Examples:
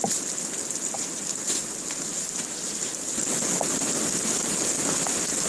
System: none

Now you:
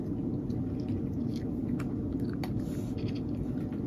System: none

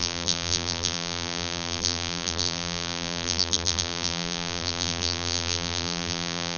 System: vocoder, BigVGAN v2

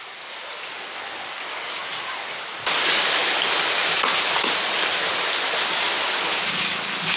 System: none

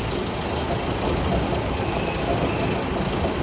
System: none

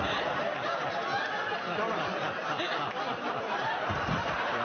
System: none